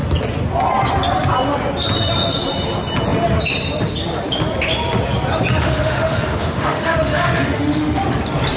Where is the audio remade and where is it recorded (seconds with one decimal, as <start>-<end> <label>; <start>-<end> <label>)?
0.0-5.6 recorded; 5.6-8.0 remade; 8.0-8.6 recorded